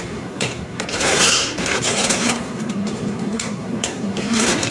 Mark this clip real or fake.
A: fake